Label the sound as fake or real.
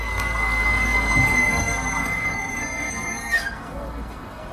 fake